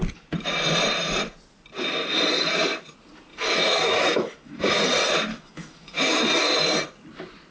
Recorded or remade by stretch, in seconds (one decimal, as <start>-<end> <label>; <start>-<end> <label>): 0.0-3.3 recorded; 3.3-4.6 remade; 4.6-5.3 recorded; 5.3-6.0 remade; 6.0-7.5 recorded